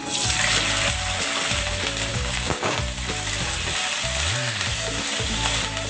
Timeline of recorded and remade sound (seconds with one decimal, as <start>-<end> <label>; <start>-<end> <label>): 0.0-2.1 recorded; 2.1-2.8 remade; 2.8-5.9 recorded